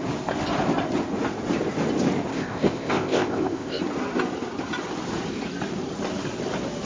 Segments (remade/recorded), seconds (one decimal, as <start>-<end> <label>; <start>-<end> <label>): 0.0-2.3 recorded; 2.3-3.8 remade; 3.8-6.9 recorded